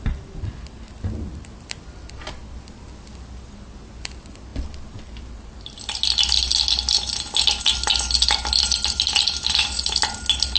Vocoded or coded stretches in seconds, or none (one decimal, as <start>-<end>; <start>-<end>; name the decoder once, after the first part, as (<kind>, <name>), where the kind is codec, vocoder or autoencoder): none